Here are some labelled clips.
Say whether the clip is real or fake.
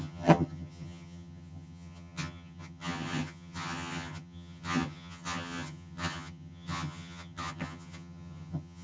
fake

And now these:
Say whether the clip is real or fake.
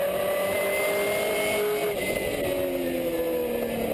real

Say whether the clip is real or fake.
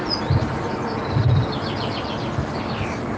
real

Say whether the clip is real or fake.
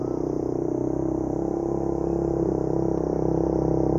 real